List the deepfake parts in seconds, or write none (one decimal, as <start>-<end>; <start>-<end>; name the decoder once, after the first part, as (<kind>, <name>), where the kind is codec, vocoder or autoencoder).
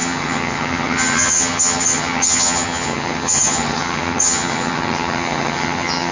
0.0-6.1 (vocoder, HiFi-GAN)